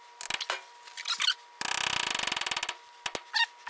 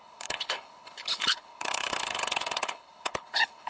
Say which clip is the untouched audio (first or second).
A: first